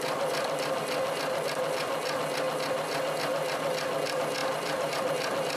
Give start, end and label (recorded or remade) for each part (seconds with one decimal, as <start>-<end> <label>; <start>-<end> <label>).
0.0-4.4 recorded; 4.4-4.9 remade; 4.9-5.6 recorded